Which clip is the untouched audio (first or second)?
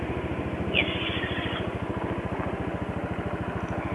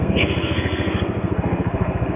first